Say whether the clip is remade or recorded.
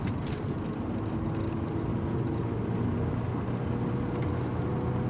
recorded